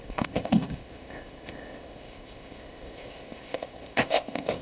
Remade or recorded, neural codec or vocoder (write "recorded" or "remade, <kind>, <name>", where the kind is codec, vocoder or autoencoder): remade, codec, ZipCodec